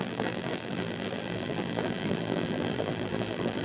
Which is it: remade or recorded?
remade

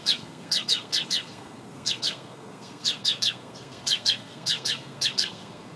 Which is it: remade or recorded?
remade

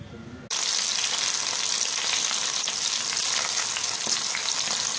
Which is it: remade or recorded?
recorded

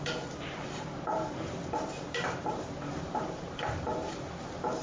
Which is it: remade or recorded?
remade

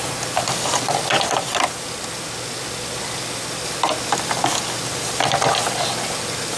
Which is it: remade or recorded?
recorded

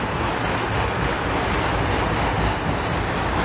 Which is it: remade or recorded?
recorded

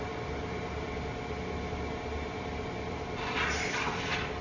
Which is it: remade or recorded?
recorded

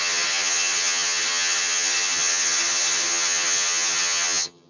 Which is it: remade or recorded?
remade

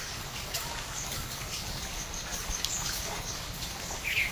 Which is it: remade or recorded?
remade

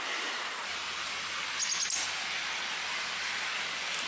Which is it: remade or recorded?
recorded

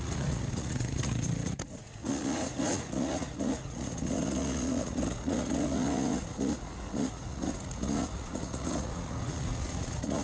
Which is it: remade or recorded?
remade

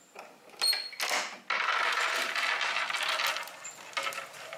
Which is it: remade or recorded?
recorded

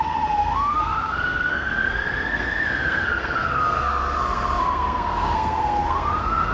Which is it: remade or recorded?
remade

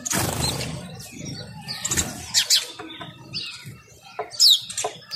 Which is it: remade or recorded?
recorded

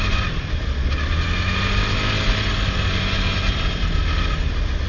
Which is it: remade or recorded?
recorded